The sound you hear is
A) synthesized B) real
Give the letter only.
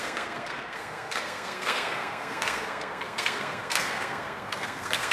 A